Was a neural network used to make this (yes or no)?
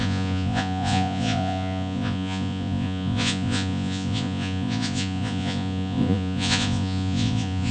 yes